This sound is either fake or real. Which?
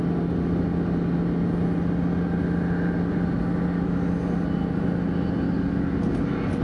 real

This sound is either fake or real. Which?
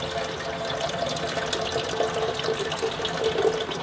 real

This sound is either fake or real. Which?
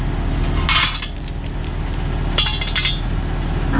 real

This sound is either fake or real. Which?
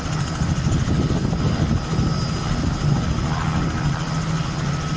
real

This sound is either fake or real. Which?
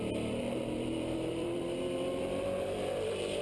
fake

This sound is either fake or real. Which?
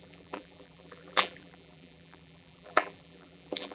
fake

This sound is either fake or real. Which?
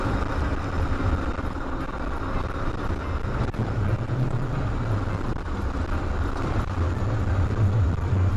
real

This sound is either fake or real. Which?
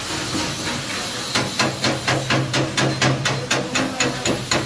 real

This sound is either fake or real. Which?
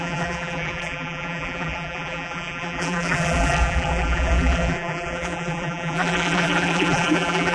fake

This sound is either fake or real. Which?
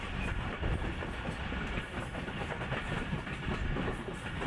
real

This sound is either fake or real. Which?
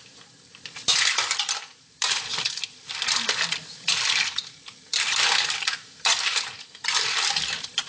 fake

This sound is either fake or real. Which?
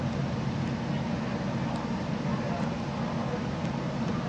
real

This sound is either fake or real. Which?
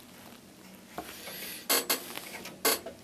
real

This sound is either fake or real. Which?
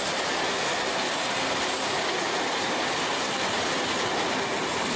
real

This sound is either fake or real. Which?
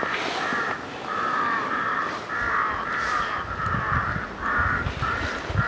real